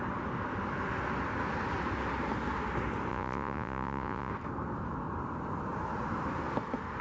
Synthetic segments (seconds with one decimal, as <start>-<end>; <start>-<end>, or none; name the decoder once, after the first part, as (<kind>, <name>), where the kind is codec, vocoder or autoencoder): 3.1-4.3 (vocoder, Vocos)